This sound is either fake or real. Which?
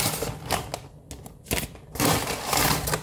real